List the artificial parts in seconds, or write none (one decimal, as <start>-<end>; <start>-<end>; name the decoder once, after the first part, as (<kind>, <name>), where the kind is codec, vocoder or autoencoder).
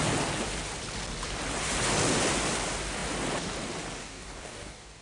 4.0-5.0 (codec, DAC)